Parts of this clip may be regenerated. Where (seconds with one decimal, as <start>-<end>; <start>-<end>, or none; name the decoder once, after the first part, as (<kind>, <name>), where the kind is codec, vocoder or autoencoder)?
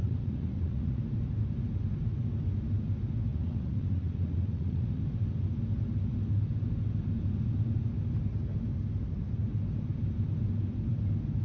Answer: 0.0-1.0 (vocoder, Vocos); 3.3-5.0